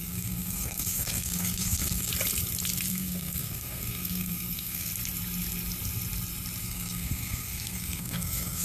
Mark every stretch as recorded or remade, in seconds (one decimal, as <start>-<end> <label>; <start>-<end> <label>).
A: 0.0-2.1 remade; 2.1-2.9 recorded; 2.9-4.9 remade; 4.9-6.6 recorded; 6.6-8.6 remade